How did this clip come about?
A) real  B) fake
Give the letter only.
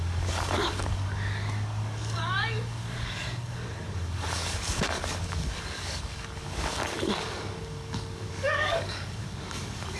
B